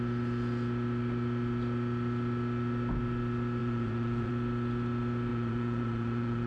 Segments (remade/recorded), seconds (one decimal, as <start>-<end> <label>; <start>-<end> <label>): 0.0-3.6 recorded; 3.6-4.3 remade; 4.3-5.3 recorded; 5.3-6.5 remade